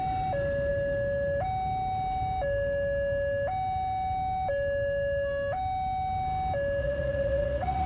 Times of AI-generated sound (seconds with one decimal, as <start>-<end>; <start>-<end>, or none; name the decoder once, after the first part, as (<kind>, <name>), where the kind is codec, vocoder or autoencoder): 6.8-7.9 (vocoder, Vocos)